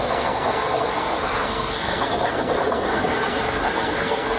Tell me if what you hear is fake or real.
fake